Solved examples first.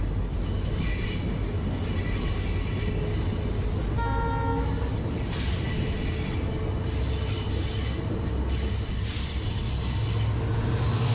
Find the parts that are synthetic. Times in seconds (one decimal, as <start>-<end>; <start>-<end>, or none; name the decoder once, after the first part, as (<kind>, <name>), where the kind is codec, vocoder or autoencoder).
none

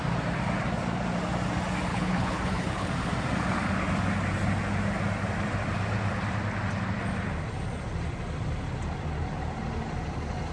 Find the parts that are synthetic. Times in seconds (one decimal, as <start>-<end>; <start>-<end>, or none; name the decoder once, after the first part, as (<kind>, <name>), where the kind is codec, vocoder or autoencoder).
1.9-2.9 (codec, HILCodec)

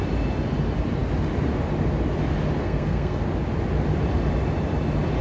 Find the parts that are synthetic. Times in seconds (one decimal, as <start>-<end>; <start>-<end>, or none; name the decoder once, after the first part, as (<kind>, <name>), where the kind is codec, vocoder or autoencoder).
2.6-3.2 (codec, SNAC)